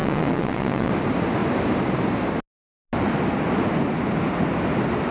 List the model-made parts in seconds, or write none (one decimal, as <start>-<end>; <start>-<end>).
0.0-0.9